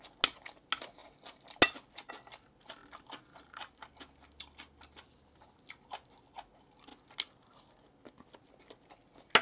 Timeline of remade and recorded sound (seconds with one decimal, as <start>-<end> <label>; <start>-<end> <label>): 0.0-9.4 recorded